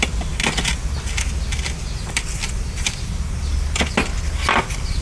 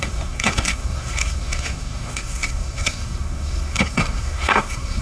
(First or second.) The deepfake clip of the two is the second